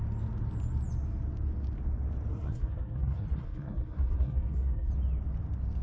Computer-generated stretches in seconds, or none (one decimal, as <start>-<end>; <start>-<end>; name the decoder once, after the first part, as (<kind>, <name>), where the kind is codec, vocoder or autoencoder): 2.3-4.9 (codec, SNAC)